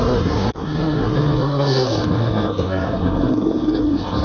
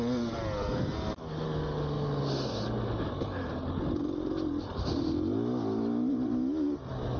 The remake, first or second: first